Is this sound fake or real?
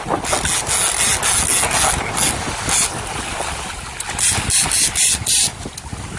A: real